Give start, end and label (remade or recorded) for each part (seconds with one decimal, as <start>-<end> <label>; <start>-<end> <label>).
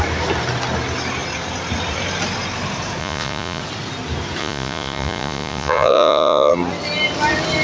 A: 0.0-3.0 recorded; 3.0-3.6 remade; 3.6-4.4 recorded; 4.4-6.5 remade; 6.5-7.6 recorded